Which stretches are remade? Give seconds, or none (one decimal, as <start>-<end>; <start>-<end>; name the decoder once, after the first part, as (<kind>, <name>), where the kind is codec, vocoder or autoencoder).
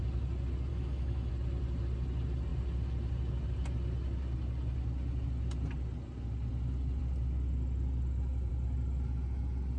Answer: 0.7-1.3 (autoencoder, DAC-VAE)